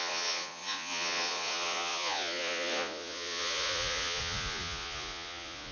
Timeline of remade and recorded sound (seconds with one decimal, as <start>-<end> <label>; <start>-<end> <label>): 0.0-5.7 remade